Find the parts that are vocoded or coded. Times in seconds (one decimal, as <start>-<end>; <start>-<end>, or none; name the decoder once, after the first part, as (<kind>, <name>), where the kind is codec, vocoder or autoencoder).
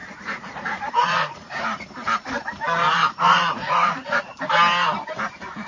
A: 0.0-1.6 (vocoder, Vocos); 3.0-4.2